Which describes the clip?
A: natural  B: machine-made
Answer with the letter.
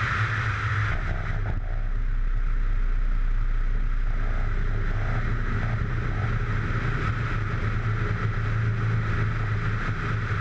A